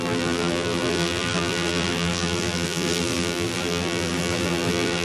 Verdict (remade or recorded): remade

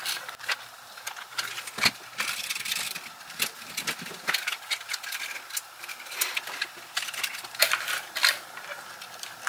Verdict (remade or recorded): remade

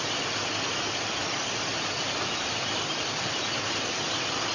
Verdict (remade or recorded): remade